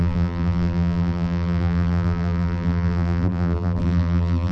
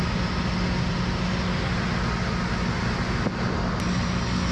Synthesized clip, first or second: first